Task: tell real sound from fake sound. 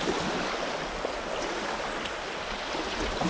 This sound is real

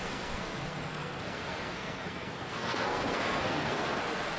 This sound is fake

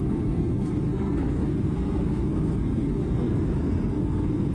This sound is fake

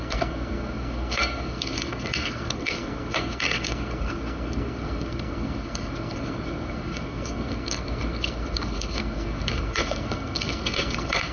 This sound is fake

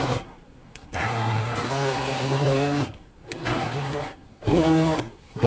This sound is fake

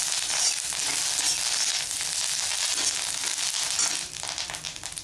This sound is real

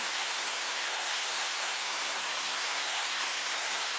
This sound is fake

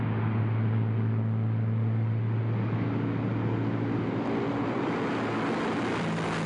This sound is real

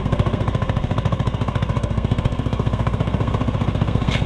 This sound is fake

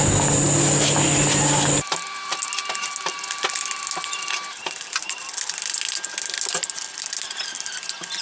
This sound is real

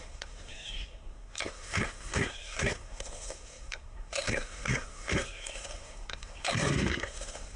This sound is fake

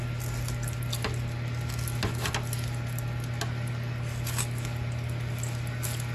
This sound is real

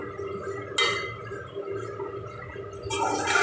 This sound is real